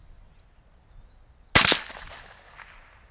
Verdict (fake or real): real